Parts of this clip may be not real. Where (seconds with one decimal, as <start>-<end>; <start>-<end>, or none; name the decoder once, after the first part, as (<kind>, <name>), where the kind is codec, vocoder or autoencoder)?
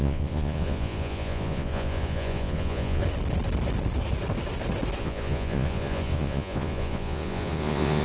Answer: 0.0-3.0 (vocoder, Vocos); 5.0-8.0